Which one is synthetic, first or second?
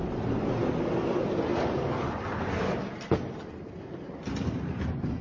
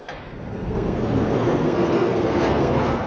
second